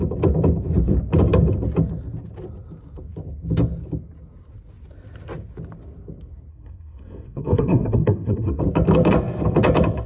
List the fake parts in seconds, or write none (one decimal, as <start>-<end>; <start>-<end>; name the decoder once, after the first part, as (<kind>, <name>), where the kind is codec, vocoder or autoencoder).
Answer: 6.5-8.6 (codec, SNAC)